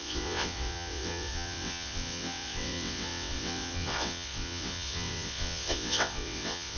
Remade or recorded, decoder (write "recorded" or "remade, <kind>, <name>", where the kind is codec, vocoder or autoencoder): remade, vocoder, WaveNeXt